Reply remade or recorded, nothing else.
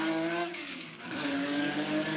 remade